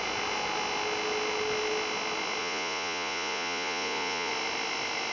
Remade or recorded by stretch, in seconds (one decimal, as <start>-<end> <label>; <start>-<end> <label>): 0.0-2.4 recorded; 2.4-4.3 remade; 4.3-5.1 recorded